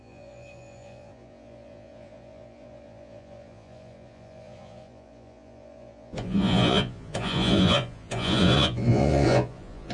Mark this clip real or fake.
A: fake